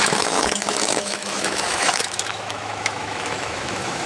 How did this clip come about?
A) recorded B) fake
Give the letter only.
B